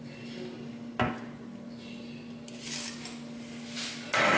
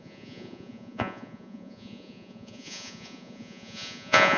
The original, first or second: first